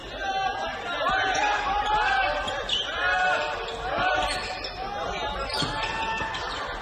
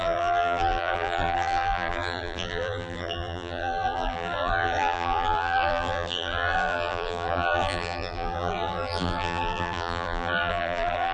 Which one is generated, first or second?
second